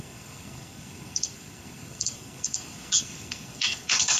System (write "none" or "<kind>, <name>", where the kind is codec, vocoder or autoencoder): codec, SNAC